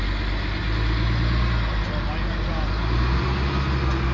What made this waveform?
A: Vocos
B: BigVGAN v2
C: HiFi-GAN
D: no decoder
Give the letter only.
D